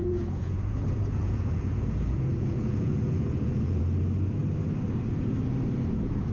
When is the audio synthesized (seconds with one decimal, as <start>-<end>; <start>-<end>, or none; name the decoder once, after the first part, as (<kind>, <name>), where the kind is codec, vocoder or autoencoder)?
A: 0.0-3.8 (vocoder, Vocos)